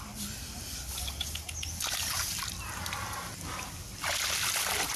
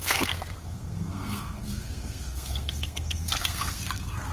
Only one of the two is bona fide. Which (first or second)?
first